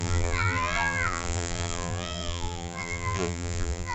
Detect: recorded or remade remade